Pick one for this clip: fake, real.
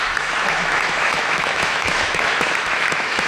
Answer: fake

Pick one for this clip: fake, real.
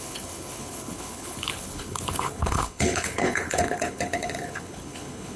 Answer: fake